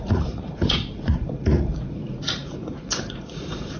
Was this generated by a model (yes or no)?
yes